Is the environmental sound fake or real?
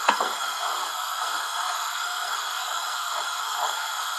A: fake